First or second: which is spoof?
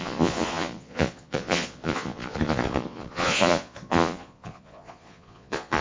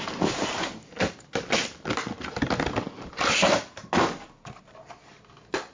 first